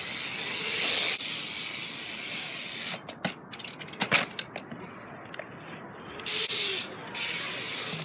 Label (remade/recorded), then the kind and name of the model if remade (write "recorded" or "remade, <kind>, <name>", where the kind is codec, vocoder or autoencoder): recorded